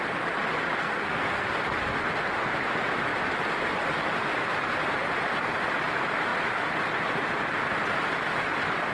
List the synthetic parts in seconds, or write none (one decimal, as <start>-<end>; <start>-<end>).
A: 0.8-1.5